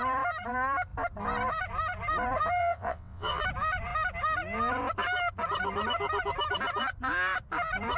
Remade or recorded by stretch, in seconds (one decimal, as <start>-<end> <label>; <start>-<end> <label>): 0.0-2.6 recorded; 2.6-3.4 remade; 3.4-8.0 recorded